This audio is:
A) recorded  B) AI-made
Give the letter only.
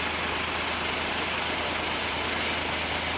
A